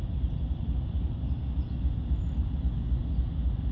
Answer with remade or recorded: recorded